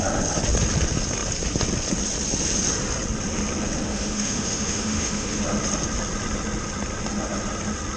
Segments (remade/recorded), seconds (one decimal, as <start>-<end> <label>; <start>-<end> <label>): 0.0-3.9 recorded; 3.9-5.4 remade; 5.4-8.0 recorded